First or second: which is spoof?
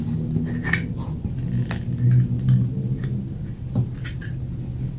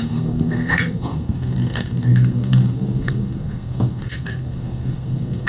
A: second